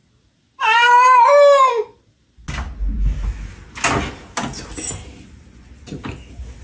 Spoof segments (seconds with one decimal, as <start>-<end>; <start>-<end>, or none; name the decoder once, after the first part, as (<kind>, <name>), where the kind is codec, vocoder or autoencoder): none